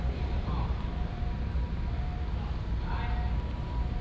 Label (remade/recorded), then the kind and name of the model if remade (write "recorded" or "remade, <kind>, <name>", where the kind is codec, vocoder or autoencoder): recorded